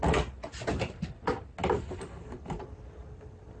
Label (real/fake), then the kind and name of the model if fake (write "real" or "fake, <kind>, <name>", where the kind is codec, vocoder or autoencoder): real